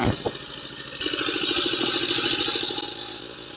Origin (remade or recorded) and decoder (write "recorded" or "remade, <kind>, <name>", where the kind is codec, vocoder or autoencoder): recorded